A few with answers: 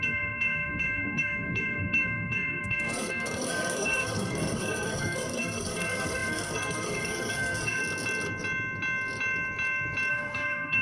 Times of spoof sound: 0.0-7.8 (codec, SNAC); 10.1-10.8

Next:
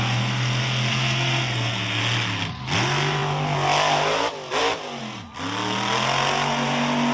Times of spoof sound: 0.9-2.0 (codec, SNAC)